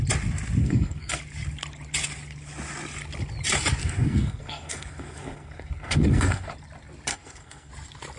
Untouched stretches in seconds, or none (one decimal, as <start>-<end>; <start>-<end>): 0.0-0.6; 1.2-3.8; 6.5-7.1; 7.7-8.2